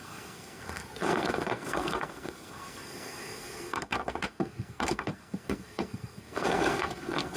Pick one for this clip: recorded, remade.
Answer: remade